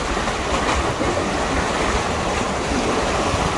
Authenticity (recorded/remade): recorded